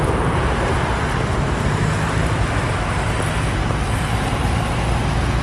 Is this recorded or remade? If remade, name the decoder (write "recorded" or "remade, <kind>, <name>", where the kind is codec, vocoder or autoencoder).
recorded